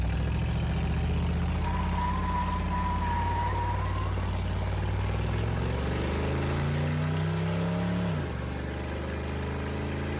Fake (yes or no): no